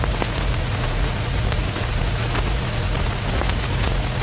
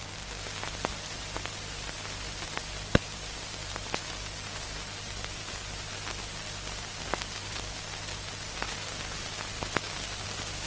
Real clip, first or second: second